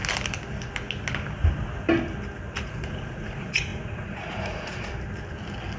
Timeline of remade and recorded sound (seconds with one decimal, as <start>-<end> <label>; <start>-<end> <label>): 0.0-2.6 recorded; 2.6-4.9 remade; 4.9-5.8 recorded